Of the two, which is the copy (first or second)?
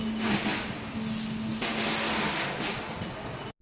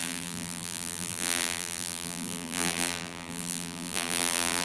second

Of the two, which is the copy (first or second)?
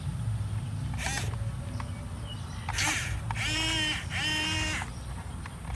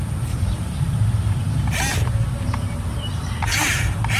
second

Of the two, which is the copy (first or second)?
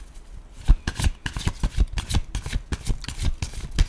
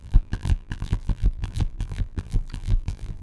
second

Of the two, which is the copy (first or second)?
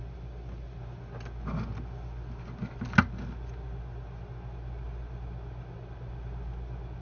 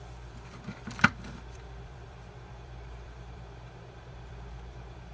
second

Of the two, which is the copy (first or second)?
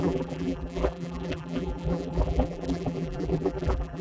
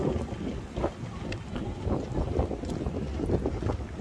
first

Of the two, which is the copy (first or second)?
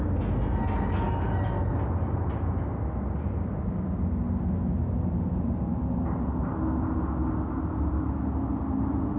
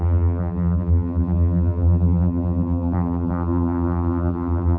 second